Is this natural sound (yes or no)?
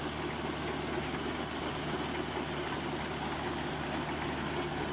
yes